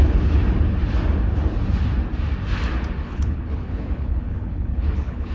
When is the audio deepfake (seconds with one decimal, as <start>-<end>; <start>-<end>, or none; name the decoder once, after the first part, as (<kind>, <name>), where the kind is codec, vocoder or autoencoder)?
0.0-0.4 (codec, HILCodec); 3.0-5.3

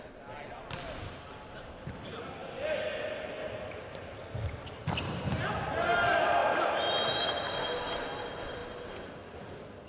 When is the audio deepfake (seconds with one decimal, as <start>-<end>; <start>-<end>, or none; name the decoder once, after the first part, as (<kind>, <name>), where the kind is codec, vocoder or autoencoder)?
2.4-5.4 (vocoder, BigVGAN v2); 8.6-9.5

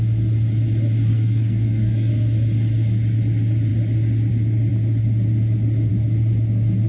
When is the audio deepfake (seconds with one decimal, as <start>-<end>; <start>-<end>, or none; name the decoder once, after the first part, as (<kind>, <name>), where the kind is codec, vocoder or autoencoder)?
1.1-2.1 (codec, SNAC)

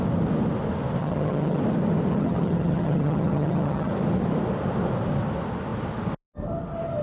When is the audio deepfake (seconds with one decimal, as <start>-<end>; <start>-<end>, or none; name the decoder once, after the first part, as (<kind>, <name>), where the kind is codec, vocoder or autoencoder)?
1.0-1.6 (vocoder, HiFi-GAN); 2.1-3.9

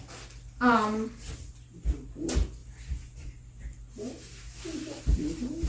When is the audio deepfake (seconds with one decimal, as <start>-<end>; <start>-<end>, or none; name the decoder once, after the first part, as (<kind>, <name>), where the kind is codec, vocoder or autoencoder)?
none